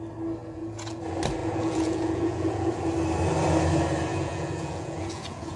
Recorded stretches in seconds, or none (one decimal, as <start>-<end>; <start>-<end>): 0.0-0.4; 1.0-1.4; 2.7-4.1